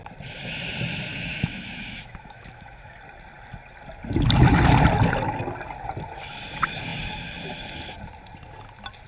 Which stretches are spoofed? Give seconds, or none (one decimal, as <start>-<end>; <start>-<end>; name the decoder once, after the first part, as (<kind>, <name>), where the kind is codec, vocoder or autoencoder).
1.1-3.0 (autoencoder, DAC-VAE)